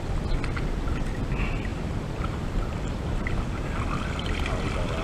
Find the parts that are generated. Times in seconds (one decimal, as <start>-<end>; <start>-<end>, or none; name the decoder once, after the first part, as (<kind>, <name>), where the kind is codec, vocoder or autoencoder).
1.7-3.7 (vocoder, BigVGAN v2)